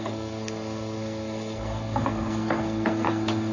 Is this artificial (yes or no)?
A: yes